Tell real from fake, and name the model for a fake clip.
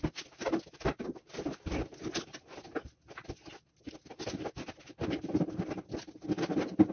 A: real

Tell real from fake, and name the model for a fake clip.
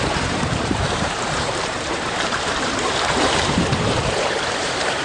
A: fake, vocoder, BigVGAN v2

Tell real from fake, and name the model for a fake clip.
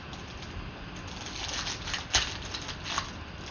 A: real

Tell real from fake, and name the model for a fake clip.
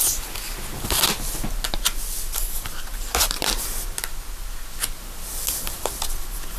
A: real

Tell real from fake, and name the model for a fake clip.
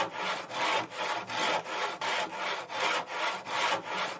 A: real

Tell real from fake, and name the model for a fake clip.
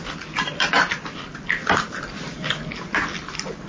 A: real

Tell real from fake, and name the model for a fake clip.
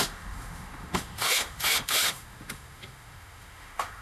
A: fake, autoencoder, DAC-VAE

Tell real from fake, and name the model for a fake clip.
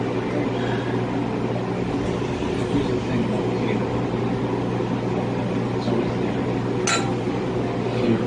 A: real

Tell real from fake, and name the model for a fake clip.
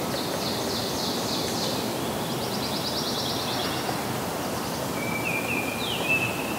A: real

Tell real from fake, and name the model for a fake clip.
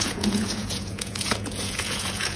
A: fake, vocoder, Vocos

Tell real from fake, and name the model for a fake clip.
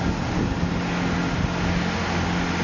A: real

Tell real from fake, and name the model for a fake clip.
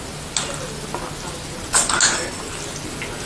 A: real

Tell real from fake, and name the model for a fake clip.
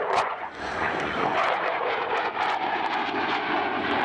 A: fake, vocoder, Vocos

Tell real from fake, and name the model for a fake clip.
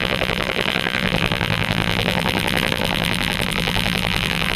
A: fake, vocoder, BigVGAN v2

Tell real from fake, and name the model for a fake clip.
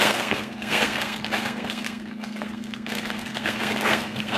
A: fake, codec, SNAC